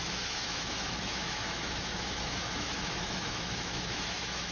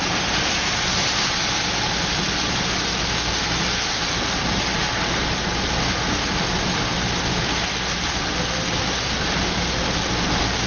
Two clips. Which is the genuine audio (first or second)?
second